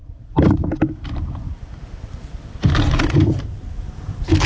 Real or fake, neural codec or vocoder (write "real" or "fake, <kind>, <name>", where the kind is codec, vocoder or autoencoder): fake, vocoder, BigVGAN v2